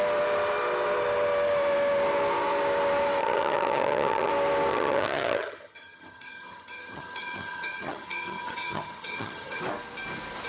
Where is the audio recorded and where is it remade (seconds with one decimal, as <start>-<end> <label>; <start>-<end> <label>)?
0.0-3.2 recorded; 3.2-4.3 remade; 4.3-4.7 recorded; 4.7-9.6 remade; 9.6-10.5 recorded